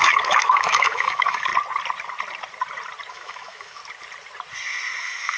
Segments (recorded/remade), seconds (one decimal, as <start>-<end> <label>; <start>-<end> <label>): 0.0-1.5 remade; 1.5-3.1 recorded; 3.1-3.8 remade; 3.8-5.0 recorded; 5.0-5.4 remade